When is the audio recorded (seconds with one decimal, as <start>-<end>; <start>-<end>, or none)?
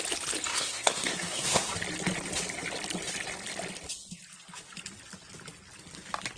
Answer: 0.0-0.5; 1.7-6.4